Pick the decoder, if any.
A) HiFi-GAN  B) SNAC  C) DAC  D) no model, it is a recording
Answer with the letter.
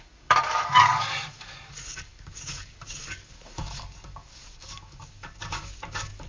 C